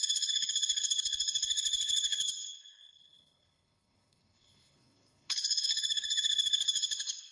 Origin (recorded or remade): remade